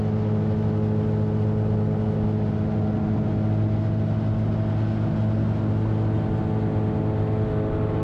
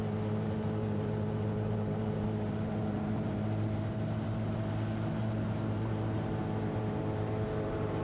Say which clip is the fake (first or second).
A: second